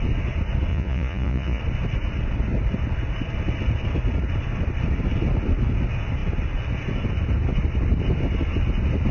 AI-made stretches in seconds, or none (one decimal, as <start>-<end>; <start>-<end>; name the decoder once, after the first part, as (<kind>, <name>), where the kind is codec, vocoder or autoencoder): 0.7-1.6 (vocoder, Vocos)